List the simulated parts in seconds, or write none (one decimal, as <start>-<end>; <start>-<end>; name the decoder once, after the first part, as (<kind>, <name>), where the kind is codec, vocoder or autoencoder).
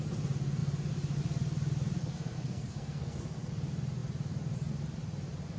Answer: 2.0-3.5 (codec, SNAC)